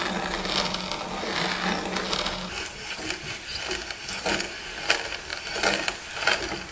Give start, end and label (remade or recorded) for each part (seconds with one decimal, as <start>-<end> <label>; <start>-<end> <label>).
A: 0.0-6.7 recorded